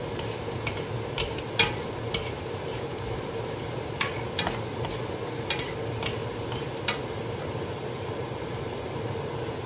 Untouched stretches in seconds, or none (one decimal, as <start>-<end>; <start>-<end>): 0.0-6.2; 8.6-9.7